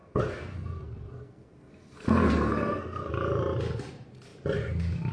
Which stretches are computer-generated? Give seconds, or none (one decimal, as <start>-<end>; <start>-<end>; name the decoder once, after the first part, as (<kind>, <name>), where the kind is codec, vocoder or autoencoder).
0.0-3.1 (codec, SNAC)